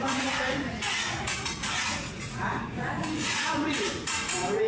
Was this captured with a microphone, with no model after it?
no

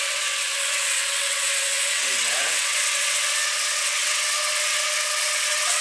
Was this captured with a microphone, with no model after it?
no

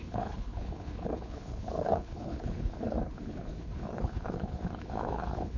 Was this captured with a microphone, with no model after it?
no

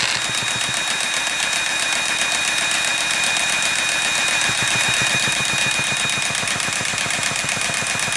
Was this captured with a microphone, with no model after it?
yes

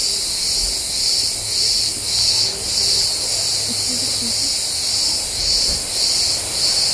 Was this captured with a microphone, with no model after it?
yes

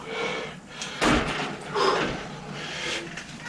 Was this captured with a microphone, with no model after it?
yes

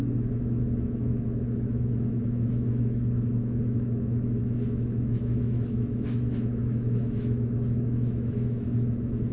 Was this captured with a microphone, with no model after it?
no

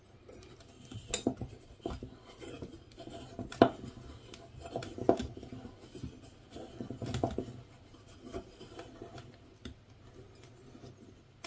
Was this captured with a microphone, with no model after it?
yes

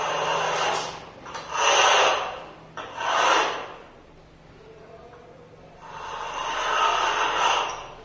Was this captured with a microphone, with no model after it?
yes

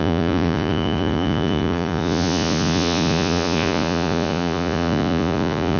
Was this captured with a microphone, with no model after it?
no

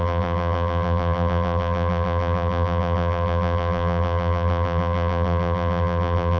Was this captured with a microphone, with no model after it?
no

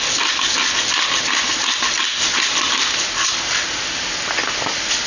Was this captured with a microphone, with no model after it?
yes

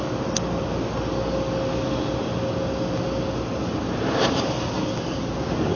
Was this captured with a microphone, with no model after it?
yes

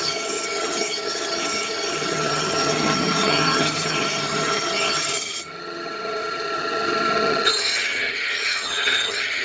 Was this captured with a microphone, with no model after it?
no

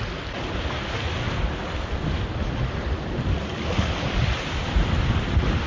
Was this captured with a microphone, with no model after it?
yes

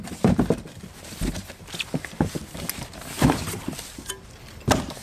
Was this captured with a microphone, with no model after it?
yes